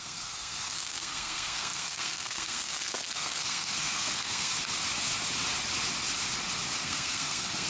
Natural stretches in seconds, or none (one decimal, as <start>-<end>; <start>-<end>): 4.5-6.8